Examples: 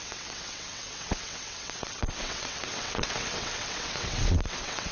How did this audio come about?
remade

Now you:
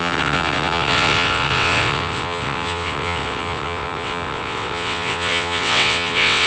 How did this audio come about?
remade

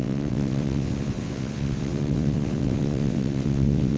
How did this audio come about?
remade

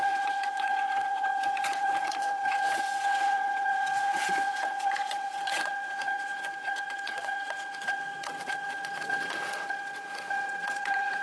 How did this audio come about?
remade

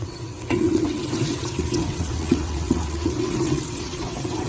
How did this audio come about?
remade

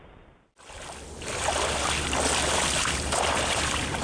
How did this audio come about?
recorded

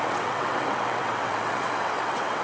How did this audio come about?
remade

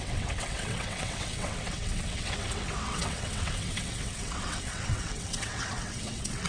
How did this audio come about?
remade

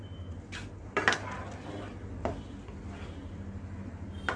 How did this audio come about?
recorded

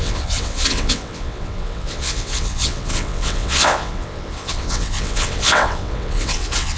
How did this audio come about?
remade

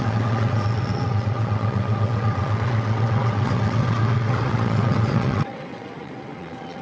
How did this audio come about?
remade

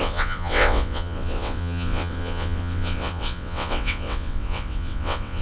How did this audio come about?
remade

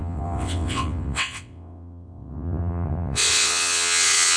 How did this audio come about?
remade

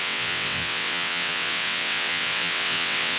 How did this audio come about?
remade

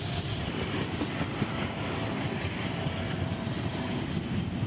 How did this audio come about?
recorded